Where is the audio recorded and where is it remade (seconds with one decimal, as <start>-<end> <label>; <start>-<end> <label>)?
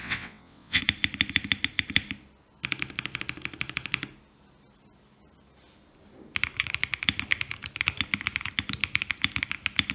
0.0-0.8 remade; 0.8-9.9 recorded